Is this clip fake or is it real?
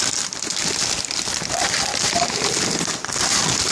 real